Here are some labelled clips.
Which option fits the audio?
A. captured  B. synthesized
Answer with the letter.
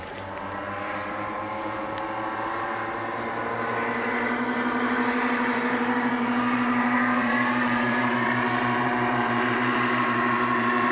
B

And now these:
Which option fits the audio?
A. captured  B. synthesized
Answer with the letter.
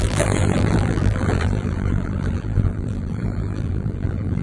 B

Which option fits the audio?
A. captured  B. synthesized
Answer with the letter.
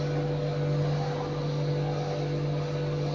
A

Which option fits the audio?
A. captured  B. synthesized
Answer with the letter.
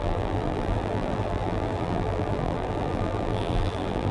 B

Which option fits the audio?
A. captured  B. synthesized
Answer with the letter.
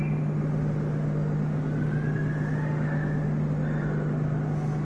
A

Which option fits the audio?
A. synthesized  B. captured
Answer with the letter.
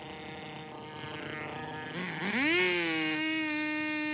B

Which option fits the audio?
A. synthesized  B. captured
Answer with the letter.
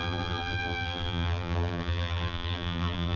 A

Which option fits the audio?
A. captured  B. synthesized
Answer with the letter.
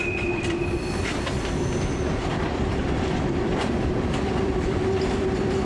B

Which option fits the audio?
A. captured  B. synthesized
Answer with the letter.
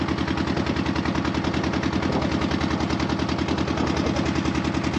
A